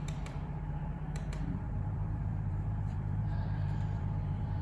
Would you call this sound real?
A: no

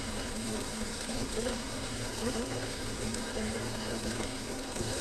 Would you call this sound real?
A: no